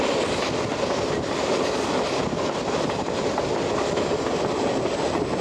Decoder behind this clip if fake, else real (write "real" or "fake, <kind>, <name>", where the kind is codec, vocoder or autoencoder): real